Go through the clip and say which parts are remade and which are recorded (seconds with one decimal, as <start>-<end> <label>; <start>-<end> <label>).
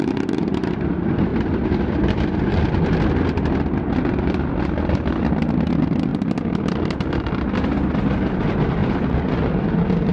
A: 0.0-1.3 recorded; 1.3-5.6 remade; 5.6-8.8 recorded; 8.8-9.3 remade; 9.3-10.1 recorded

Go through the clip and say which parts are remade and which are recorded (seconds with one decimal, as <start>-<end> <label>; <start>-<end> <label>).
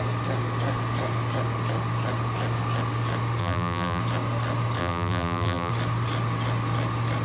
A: 0.0-3.4 recorded; 3.4-4.0 remade; 4.0-4.8 recorded; 4.8-5.7 remade; 5.7-7.2 recorded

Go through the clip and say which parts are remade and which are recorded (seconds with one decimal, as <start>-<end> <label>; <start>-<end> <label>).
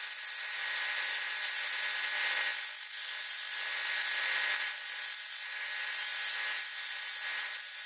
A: 0.0-7.9 recorded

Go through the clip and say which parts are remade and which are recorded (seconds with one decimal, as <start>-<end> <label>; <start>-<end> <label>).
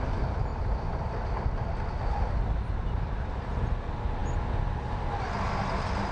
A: 0.0-6.1 recorded